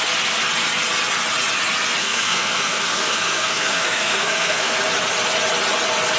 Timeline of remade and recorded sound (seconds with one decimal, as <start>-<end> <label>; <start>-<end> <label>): 0.0-2.0 recorded; 2.0-4.8 remade; 4.8-6.2 recorded